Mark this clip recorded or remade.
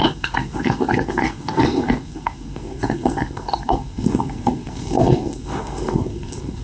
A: remade